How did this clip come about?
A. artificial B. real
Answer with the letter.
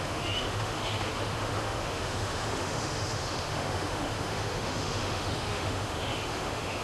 A